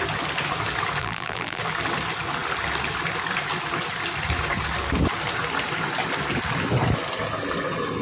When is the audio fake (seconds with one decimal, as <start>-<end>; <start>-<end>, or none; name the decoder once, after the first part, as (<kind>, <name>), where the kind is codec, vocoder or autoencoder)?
1.0-1.6 (vocoder, BigVGAN v2)